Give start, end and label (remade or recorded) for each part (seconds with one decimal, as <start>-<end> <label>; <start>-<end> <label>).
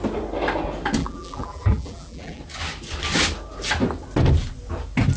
0.0-1.0 recorded; 1.0-2.4 remade; 2.4-5.2 recorded